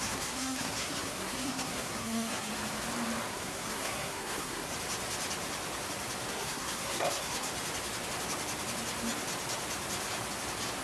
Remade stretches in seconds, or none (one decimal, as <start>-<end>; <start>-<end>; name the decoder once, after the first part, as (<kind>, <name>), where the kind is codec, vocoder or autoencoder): 0.0-2.5 (codec, SNAC); 3.3-4.7; 6.3-7.5